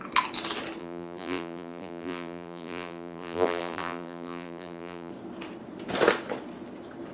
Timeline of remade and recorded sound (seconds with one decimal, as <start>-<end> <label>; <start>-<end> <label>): 0.0-0.8 recorded; 0.8-5.1 remade; 5.1-7.1 recorded